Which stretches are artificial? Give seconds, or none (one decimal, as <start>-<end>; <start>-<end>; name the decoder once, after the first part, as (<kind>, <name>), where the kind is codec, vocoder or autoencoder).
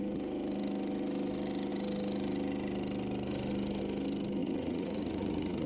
4.4-5.7 (vocoder, Vocos)